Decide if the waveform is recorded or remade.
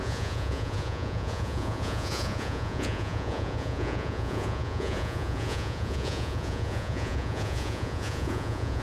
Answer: remade